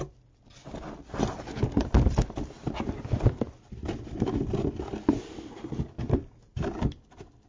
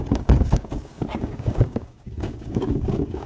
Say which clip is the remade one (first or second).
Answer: second